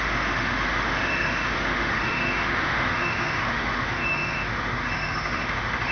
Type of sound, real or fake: fake